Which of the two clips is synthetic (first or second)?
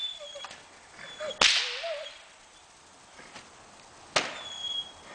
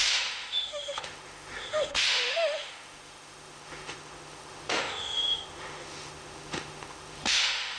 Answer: second